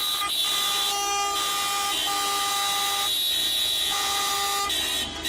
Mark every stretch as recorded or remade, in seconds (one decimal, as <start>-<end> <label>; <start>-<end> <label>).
0.0-3.4 recorded; 3.4-4.3 remade; 4.3-5.3 recorded